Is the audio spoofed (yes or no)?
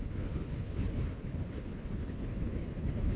yes